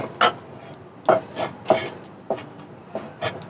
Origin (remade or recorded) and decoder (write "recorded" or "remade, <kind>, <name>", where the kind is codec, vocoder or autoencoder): recorded